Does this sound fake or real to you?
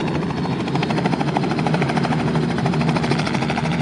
real